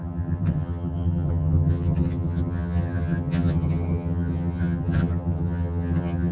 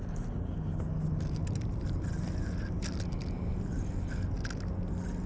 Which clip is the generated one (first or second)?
first